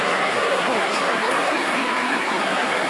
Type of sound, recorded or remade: remade